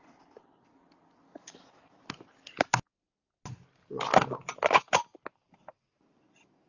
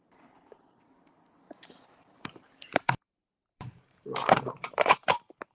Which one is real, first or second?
first